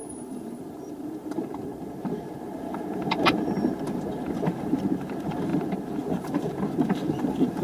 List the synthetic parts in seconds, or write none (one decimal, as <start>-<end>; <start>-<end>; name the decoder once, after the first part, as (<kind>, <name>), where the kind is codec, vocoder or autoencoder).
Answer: 0.0-7.6 (vocoder, BigVGAN v2)